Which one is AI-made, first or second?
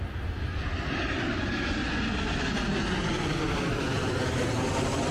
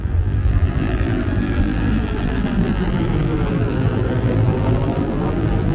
second